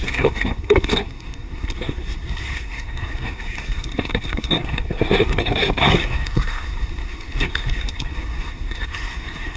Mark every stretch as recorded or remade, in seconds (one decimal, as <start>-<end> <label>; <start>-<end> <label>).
0.0-9.6 remade